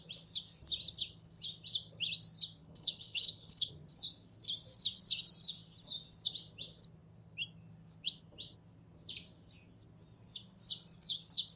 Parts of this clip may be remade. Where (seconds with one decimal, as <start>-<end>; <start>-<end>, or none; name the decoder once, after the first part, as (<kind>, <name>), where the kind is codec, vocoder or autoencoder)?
2.6-3.7 (codec, HILCodec)